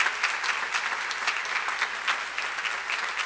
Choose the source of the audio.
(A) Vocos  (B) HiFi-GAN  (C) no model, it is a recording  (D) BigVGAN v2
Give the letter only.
C